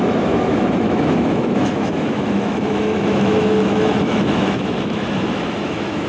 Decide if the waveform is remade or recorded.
remade